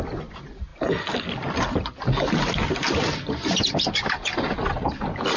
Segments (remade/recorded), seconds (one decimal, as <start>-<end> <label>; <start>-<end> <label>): 0.0-5.4 recorded